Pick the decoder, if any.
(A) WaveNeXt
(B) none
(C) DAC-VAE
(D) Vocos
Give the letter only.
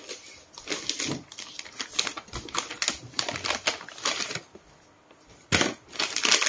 B